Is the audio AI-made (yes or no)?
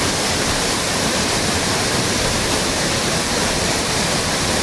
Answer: yes